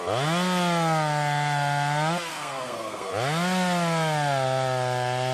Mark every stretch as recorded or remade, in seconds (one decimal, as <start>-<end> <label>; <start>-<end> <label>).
0.0-2.3 recorded; 2.3-3.1 remade; 3.1-5.3 recorded